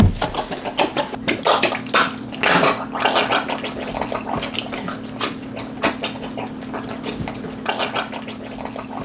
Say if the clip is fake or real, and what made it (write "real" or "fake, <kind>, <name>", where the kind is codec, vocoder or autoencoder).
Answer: real